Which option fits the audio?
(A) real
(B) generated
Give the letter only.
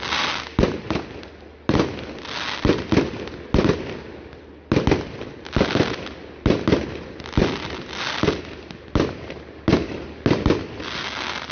A